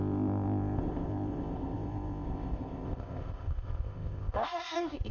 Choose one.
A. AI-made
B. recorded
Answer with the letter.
A